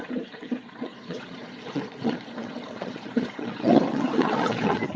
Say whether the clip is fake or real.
fake